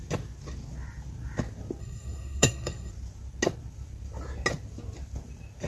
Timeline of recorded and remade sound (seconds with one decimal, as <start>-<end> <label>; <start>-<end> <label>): 0.0-1.8 recorded; 1.8-2.9 remade; 2.9-5.7 recorded